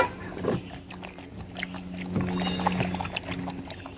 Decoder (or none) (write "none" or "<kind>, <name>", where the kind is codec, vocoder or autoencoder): none